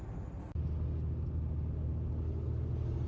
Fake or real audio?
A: real